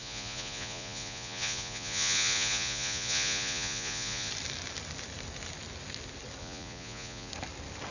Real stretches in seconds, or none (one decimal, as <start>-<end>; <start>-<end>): 4.3-6.4; 7.3-7.9

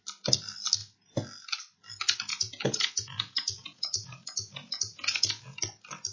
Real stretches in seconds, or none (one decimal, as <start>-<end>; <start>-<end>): 0.0-2.3; 5.6-6.1